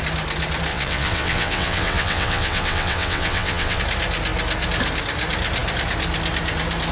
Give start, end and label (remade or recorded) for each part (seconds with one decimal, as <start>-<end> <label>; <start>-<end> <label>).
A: 0.0-0.7 recorded; 0.7-3.8 remade; 3.8-6.9 recorded